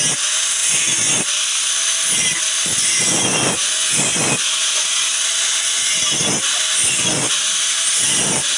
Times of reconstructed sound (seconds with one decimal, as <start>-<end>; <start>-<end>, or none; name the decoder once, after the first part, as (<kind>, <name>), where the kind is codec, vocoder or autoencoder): 0.6-1.2 (vocoder, Vocos); 2.7-5.9; 6.8-7.3